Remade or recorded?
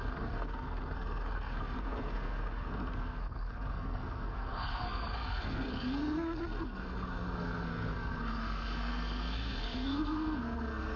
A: remade